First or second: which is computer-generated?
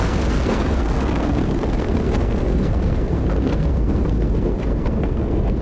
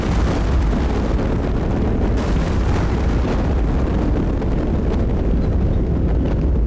first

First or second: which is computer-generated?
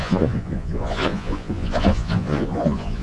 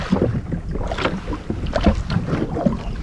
first